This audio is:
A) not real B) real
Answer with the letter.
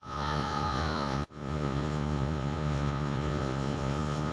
A